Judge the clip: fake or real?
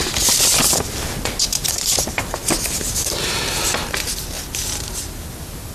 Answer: real